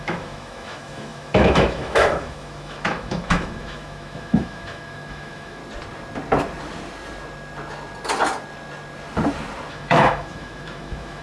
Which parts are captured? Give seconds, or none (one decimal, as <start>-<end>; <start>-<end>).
5.6-9.7